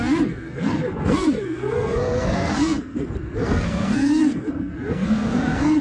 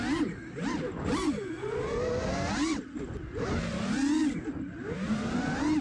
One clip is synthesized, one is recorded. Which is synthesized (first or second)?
first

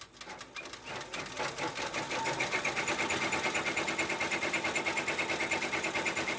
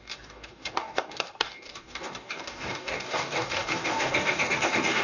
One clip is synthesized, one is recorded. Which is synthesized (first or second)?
second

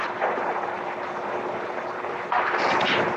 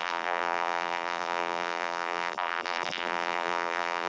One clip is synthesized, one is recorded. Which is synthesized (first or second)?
second